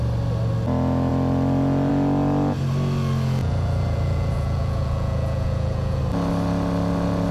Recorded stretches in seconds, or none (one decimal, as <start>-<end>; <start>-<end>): 0.0-3.4; 6.0-7.3

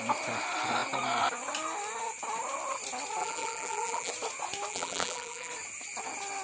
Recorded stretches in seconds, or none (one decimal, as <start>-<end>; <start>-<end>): 0.0-3.2; 4.1-4.7; 5.5-6.4

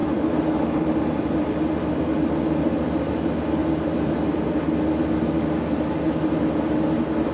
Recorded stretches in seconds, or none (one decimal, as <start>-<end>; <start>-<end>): 1.9-3.6; 4.6-7.3

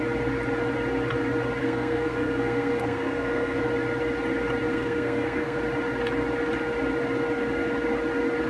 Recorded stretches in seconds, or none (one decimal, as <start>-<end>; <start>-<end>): 0.0-1.6; 3.6-4.7; 5.6-8.5